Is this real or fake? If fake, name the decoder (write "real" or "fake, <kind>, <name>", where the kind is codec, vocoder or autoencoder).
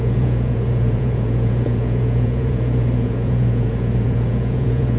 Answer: fake, vocoder, Vocos